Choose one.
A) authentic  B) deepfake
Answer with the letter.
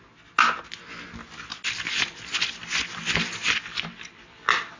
A